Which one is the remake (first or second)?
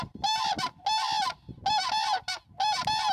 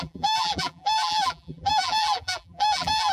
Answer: second